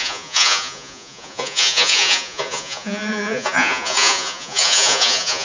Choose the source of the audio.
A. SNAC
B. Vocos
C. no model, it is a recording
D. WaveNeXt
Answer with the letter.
B